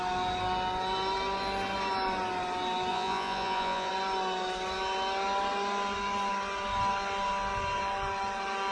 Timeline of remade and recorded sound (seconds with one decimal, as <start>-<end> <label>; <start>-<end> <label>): 0.0-2.9 recorded; 2.9-3.9 remade; 3.9-8.7 recorded